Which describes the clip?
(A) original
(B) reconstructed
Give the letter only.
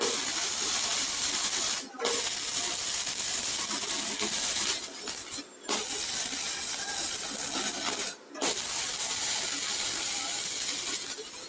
A